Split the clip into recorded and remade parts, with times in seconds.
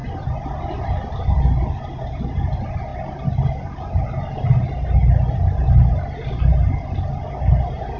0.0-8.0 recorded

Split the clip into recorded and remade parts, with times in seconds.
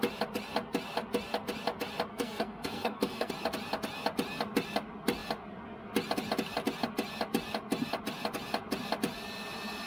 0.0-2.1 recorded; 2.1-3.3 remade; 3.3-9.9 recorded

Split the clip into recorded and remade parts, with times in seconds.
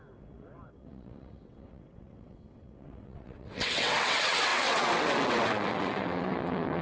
0.0-6.8 remade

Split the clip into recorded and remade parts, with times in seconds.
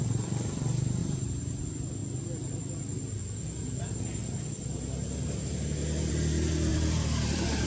0.0-1.0 recorded; 1.0-1.6 remade; 1.6-6.7 recorded; 6.7-7.7 remade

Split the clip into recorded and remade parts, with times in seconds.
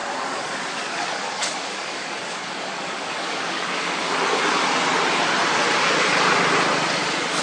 0.0-4.4 remade; 4.4-7.4 recorded